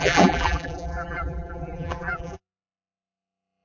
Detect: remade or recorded remade